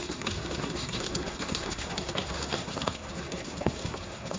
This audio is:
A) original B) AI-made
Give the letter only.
B